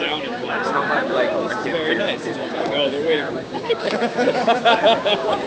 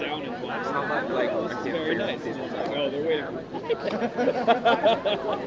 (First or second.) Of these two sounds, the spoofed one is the first